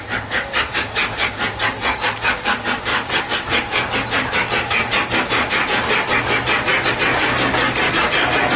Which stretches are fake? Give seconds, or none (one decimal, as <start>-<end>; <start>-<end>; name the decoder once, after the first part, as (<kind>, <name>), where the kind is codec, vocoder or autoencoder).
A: none